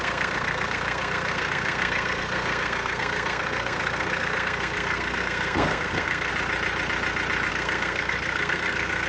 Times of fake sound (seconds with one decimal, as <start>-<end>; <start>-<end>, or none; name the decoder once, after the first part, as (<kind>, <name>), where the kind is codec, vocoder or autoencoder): 0.0-6.3 (codec, SNAC); 7.5-9.1